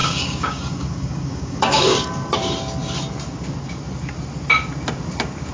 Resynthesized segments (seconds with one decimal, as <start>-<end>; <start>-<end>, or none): 0.0-2.1